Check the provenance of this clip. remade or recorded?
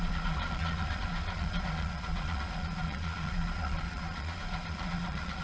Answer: remade